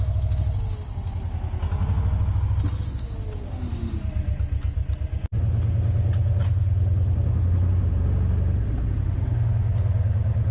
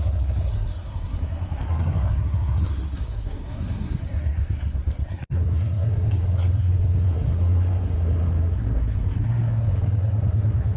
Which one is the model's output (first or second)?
second